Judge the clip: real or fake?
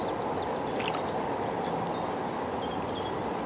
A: real